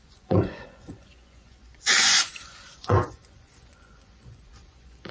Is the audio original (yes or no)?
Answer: no